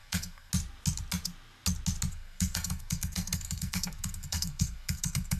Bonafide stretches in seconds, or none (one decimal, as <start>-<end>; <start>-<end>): 0.5-2.1